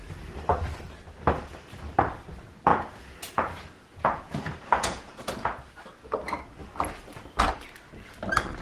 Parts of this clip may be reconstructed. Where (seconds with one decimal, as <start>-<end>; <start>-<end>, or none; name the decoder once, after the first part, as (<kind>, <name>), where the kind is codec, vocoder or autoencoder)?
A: 2.7-5.7 (vocoder, Vocos)